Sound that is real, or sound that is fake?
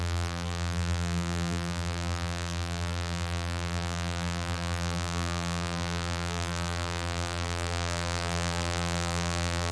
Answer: fake